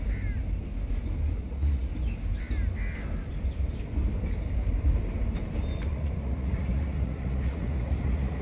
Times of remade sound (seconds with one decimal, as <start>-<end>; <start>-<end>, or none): 1.4-1.9; 5.9-8.4